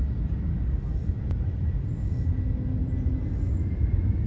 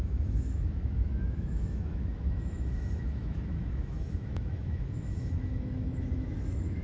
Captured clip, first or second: first